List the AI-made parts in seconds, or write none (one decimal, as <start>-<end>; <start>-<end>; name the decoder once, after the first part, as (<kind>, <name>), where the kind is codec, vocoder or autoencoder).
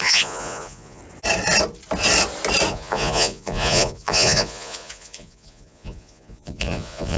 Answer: 0.0-1.0 (vocoder, Vocos); 2.7-7.2